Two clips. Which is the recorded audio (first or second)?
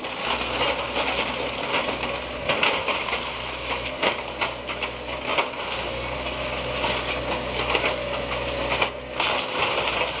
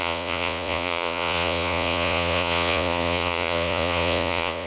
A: first